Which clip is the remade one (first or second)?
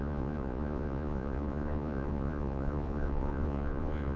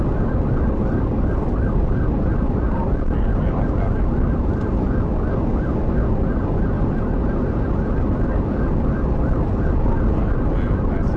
first